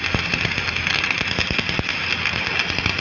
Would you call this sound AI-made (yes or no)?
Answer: no